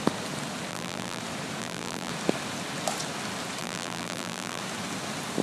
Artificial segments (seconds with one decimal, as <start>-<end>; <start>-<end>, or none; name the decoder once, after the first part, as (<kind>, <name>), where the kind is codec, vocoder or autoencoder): 0.7-1.2 (vocoder, BigVGAN v2); 1.6-2.1; 3.6-4.6